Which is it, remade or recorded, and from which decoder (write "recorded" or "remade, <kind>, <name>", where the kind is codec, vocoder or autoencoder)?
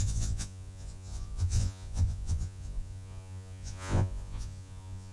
remade, vocoder, Vocos